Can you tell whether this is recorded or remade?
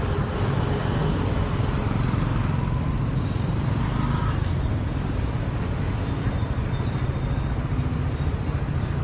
recorded